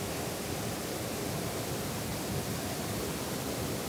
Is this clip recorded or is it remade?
recorded